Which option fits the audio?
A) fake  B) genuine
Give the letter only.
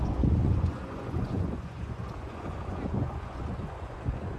A